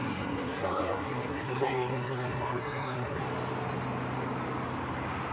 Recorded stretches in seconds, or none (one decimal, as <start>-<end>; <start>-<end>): 3.2-5.3

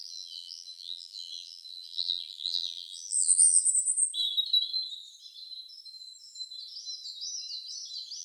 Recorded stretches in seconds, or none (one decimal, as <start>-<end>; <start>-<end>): 3.6-8.2